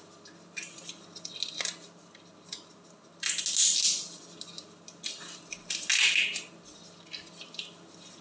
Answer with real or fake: real